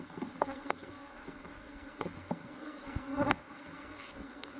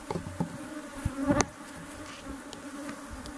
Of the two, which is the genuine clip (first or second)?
second